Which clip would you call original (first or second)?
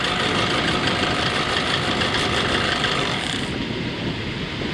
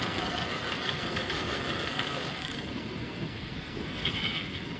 first